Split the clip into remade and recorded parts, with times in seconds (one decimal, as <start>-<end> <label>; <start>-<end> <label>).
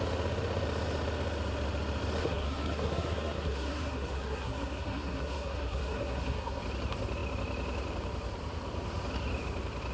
0.0-2.2 recorded; 2.2-6.6 remade; 6.6-9.9 recorded